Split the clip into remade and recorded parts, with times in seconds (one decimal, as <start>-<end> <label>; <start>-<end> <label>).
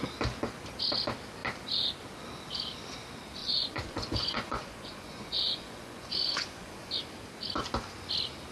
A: 0.0-3.4 recorded; 3.4-7.0 remade; 7.0-8.5 recorded